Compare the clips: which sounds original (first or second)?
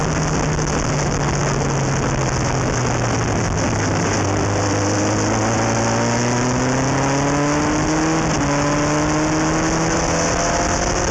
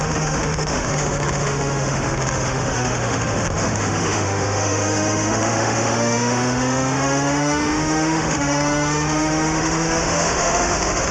first